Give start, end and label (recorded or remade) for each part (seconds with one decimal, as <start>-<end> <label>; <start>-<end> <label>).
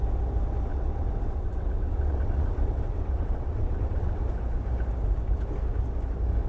0.0-0.7 recorded; 0.7-4.2 remade; 4.2-6.5 recorded